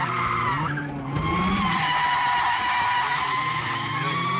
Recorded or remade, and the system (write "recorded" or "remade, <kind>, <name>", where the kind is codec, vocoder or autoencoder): recorded